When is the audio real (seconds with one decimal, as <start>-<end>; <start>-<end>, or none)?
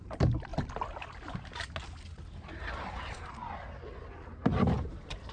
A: 0.5-2.3; 3.4-4.8